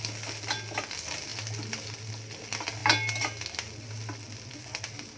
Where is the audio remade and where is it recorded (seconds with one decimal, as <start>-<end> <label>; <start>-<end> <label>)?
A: 0.0-5.2 recorded